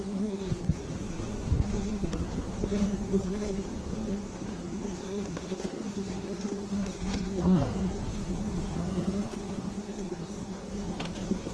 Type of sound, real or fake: fake